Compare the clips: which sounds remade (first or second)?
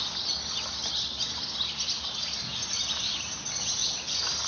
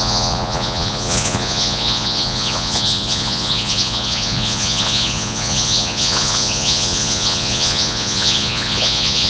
second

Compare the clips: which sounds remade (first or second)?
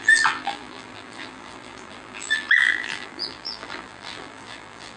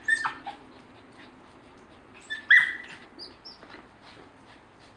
first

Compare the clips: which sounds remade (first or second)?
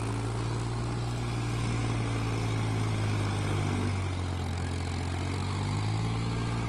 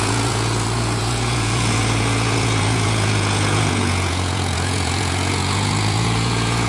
second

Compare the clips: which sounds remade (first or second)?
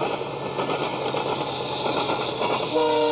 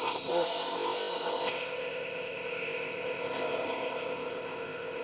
second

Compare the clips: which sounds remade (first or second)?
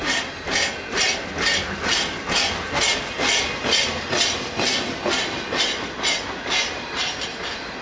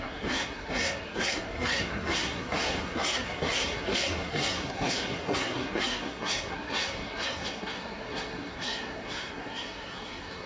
second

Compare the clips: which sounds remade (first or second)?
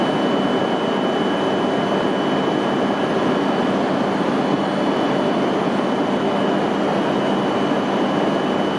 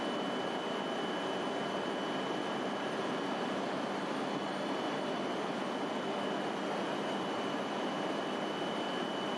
second